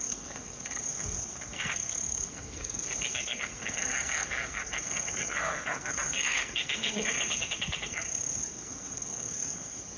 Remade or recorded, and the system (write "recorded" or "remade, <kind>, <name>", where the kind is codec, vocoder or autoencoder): remade, codec, SNAC